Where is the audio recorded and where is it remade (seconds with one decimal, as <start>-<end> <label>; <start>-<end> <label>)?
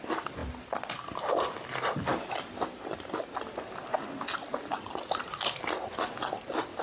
0.0-6.8 recorded